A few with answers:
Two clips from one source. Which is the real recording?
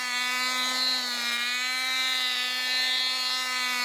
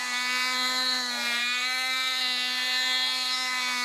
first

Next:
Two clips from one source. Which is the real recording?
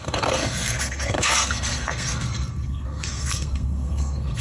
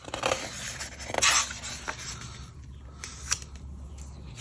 second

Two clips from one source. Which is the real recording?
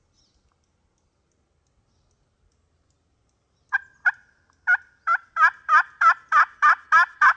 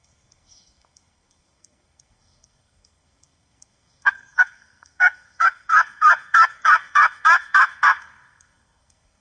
first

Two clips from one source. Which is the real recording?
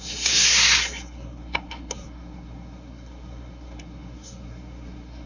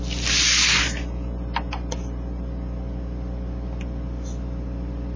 second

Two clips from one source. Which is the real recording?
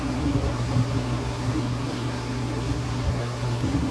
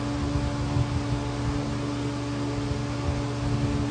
second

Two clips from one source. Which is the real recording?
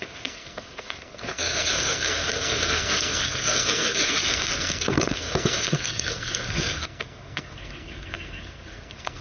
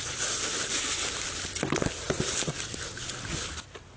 second